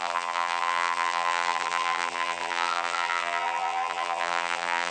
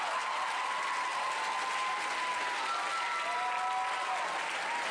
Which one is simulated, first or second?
first